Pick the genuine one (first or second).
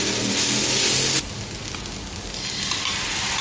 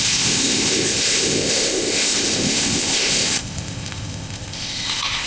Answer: first